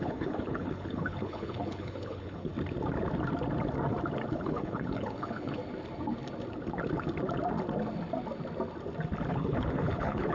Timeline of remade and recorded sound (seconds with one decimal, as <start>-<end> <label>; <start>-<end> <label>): 0.0-2.5 remade; 2.5-4.3 recorded; 4.3-5.6 remade; 5.6-9.3 recorded; 9.3-10.3 remade